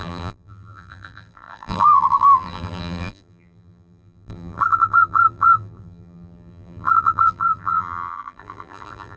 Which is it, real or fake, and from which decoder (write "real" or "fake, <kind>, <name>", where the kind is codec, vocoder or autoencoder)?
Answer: fake, vocoder, BigVGAN v2